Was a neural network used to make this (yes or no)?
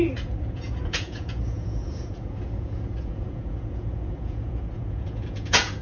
yes